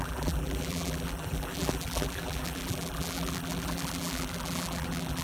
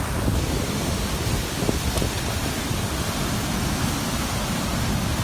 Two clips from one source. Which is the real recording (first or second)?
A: second